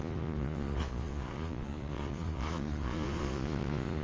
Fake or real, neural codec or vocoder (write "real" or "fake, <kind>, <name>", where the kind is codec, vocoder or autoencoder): fake, vocoder, Vocos